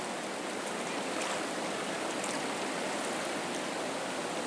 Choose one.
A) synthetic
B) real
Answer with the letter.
B